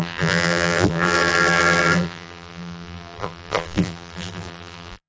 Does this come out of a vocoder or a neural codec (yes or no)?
yes